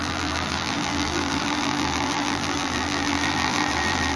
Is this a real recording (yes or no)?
no